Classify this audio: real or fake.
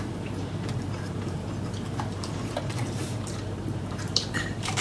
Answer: fake